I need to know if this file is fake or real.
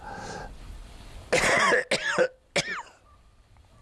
real